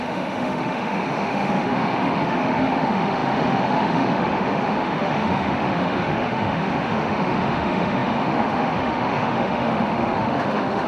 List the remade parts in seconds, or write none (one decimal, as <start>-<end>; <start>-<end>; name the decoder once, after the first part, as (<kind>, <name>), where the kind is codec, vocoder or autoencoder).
0.0-10.9 (autoencoder, DAC-VAE)